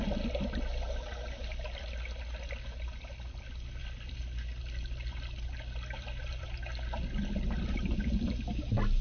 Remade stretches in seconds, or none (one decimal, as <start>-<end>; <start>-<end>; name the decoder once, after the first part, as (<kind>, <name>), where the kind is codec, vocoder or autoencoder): none